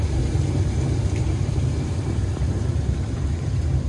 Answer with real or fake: fake